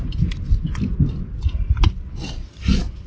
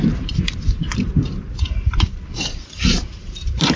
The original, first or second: first